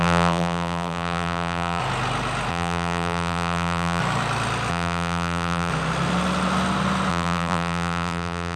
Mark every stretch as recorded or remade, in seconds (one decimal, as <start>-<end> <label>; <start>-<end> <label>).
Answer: 0.0-1.8 remade; 1.8-2.5 recorded; 2.5-4.0 remade; 4.0-4.7 recorded; 4.7-5.7 remade; 5.7-7.1 recorded; 7.1-8.6 remade